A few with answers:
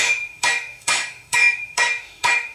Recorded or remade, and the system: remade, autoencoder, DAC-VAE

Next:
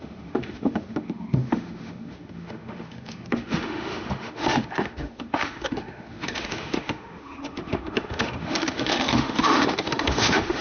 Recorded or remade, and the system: remade, autoencoder, DAC-VAE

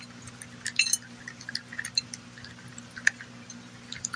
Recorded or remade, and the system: recorded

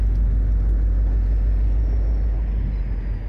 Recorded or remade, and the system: recorded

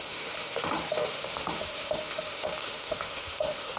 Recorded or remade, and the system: remade, autoencoder, DAC-VAE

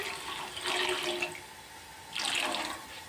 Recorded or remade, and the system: recorded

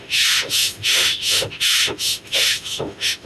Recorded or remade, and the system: remade, autoencoder, DAC-VAE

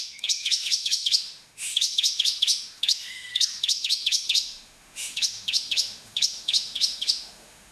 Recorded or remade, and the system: remade, autoencoder, DAC-VAE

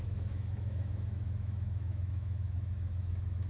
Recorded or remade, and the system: remade, autoencoder, DAC-VAE